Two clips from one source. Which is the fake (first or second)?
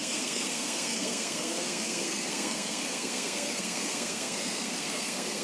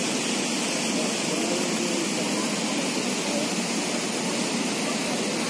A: first